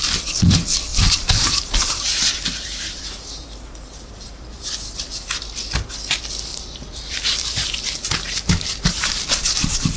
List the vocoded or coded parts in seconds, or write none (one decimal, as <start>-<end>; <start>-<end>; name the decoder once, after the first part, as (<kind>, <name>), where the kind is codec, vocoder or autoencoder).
0.9-5.3 (vocoder, BigVGAN v2); 6.5-10.0